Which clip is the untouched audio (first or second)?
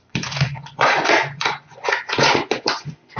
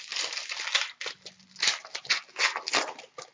second